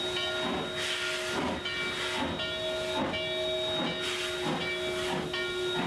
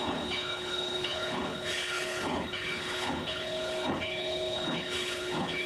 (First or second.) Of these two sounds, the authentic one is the first